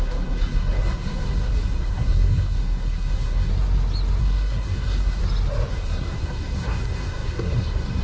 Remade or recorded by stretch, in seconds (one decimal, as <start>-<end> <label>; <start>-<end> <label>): 0.0-3.5 remade; 3.5-4.2 recorded; 4.2-5.2 remade; 5.2-5.7 recorded; 5.7-8.0 remade